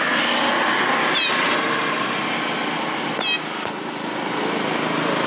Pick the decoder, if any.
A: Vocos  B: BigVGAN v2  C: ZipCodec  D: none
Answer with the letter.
D